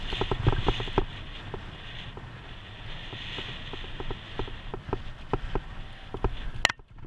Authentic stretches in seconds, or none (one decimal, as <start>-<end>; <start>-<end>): 0.0-7.1